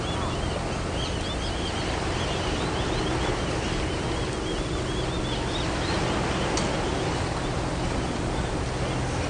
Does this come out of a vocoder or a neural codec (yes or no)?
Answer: no